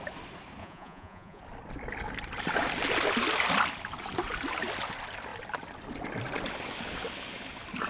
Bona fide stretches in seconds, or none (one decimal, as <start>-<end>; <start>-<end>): 0.0-0.6; 1.4-7.9